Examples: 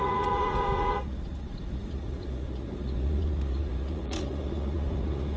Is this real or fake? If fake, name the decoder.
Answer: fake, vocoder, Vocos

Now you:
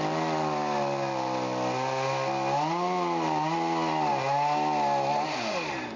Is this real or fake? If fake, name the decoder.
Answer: real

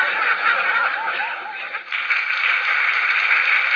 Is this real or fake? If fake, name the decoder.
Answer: real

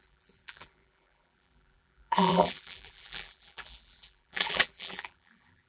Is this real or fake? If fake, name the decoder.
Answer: fake, vocoder, BigVGAN v2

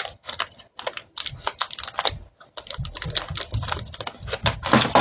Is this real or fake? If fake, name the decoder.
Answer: real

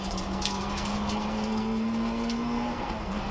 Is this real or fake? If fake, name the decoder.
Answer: fake, codec, SNAC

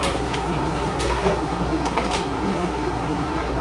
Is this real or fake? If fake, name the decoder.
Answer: fake, codec, SNAC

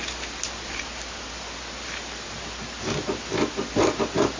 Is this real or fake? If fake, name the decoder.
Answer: real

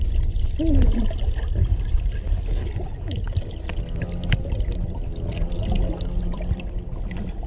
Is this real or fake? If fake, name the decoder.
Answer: real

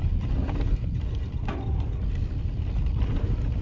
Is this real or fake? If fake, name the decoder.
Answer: real